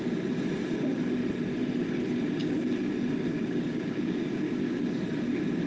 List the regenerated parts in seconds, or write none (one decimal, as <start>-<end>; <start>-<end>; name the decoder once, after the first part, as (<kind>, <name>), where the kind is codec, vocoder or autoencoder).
3.3-5.0 (codec, DAC)